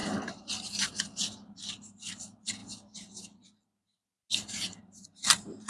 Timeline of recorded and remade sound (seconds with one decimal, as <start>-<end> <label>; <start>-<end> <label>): 0.0-2.6 remade; 2.6-4.8 recorded; 4.8-5.7 remade